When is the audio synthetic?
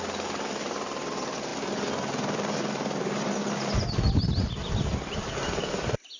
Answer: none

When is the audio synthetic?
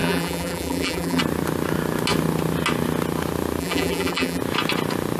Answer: 0.0-1.2 (vocoder, BigVGAN v2); 3.6-4.4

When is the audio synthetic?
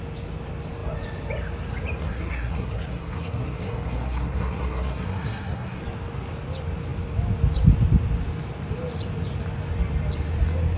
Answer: 2.0-5.8 (codec, SNAC)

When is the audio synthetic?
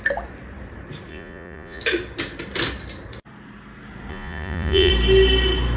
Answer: 1.1-1.8 (vocoder, Vocos); 4.1-4.9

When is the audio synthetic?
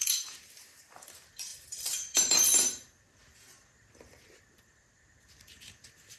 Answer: 0.0-6.2 (vocoder, BigVGAN v2)